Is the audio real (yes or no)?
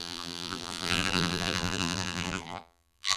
no